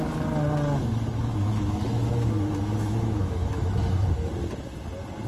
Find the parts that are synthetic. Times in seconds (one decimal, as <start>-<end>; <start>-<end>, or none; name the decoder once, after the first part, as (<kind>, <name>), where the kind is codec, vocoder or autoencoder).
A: 1.1-4.3 (autoencoder, DAC-VAE)